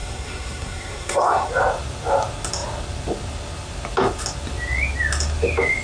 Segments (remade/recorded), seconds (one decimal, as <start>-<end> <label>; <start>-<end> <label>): 0.0-1.5 remade; 1.5-5.8 recorded